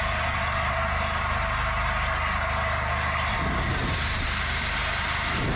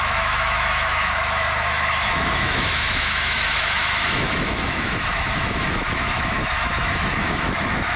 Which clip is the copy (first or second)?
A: second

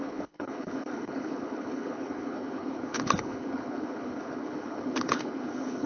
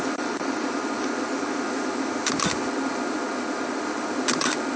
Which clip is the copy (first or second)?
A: first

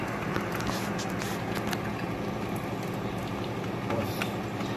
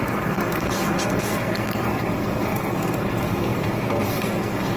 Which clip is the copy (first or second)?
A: second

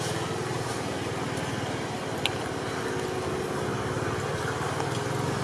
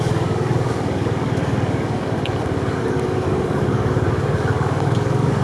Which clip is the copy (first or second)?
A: second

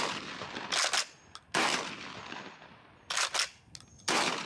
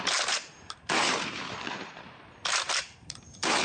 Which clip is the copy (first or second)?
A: second